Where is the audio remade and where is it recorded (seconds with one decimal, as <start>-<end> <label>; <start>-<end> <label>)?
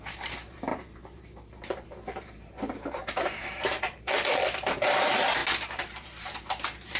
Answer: 0.0-7.0 remade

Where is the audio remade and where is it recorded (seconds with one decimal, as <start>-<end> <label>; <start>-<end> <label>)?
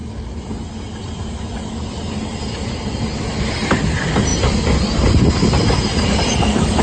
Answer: 0.0-6.8 recorded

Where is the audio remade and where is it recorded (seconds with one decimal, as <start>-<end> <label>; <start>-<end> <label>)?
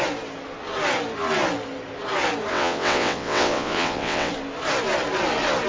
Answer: 0.0-2.5 recorded; 2.5-4.3 remade; 4.3-5.7 recorded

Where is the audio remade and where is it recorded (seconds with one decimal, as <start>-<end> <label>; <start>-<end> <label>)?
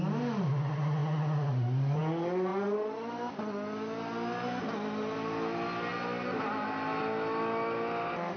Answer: 0.0-8.4 recorded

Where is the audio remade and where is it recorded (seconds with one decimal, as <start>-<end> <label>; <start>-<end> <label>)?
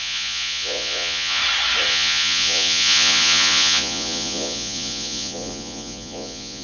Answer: 0.0-1.4 remade; 1.4-1.9 recorded; 1.9-6.6 remade